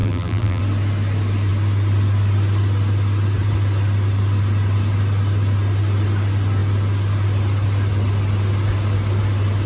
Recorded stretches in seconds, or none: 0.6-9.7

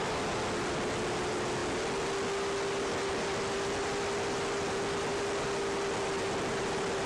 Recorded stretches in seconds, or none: 0.0-7.1

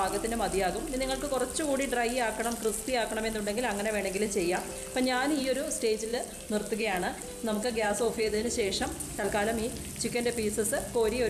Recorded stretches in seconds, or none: 0.0-6.1; 9.3-11.3

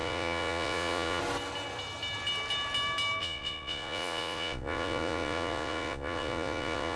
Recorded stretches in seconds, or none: 1.2-3.2

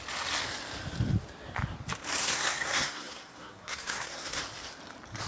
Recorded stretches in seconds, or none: 0.0-2.2; 4.4-5.3